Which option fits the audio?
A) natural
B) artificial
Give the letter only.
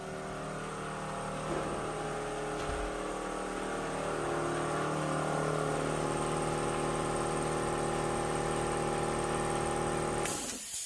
A